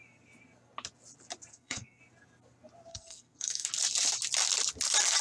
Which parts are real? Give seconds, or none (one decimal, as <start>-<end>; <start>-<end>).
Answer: 0.0-1.5; 2.0-2.9; 3.7-5.2